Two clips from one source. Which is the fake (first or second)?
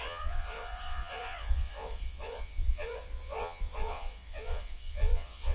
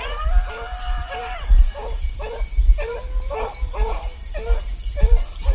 first